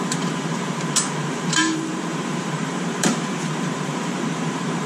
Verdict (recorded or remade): remade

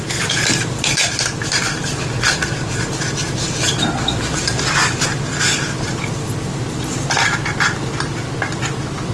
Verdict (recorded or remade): recorded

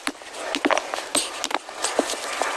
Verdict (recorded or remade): recorded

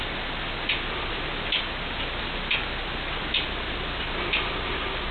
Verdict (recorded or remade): recorded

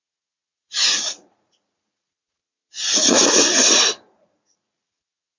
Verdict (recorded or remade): remade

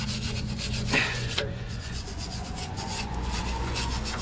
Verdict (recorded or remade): remade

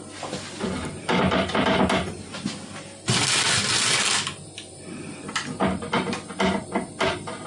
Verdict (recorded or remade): remade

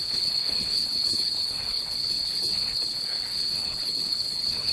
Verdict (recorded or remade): remade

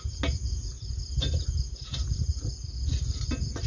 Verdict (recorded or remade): recorded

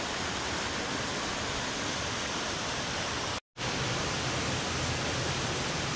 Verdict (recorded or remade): recorded